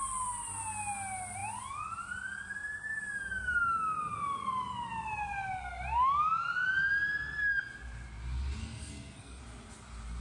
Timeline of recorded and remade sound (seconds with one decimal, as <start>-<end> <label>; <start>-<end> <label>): 0.0-8.6 recorded; 8.6-9.4 remade; 9.4-10.2 recorded